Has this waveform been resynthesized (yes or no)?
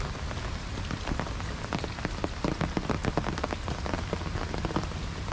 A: no